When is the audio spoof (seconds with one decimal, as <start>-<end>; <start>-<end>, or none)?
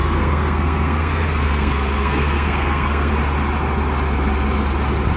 0.0-3.1